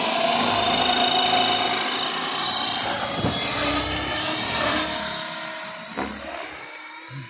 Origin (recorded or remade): recorded